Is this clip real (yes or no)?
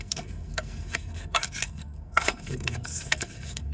no